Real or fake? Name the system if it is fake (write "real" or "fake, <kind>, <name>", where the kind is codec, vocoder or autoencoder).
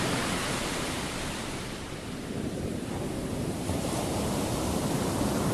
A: real